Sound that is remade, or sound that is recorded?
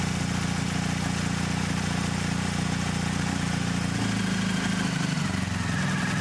recorded